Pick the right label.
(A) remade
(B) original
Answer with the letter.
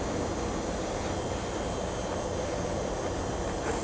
B